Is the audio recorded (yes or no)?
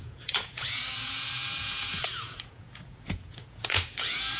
no